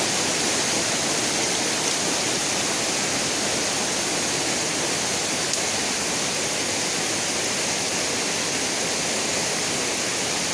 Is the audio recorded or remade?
recorded